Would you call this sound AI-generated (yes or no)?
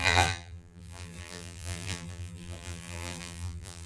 yes